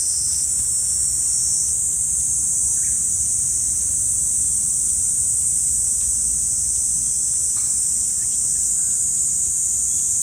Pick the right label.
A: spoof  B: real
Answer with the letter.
B